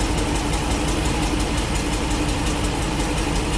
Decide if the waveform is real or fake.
real